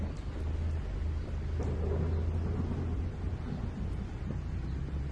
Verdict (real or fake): real